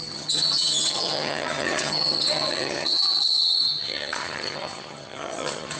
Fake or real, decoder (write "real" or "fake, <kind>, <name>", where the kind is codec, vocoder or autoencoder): fake, vocoder, HiFi-GAN